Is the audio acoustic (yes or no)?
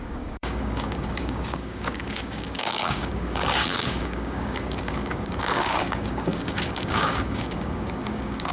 no